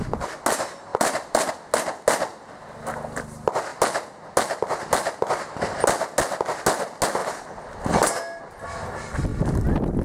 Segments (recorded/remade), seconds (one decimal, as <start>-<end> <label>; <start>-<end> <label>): 0.0-0.9 recorded; 0.9-1.5 remade; 1.5-9.3 recorded; 9.3-10.0 remade